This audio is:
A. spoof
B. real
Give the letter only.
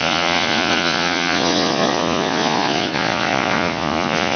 A